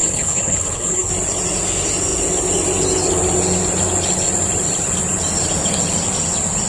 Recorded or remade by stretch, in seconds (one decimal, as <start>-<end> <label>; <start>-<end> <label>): 0.0-1.1 remade; 1.1-6.7 recorded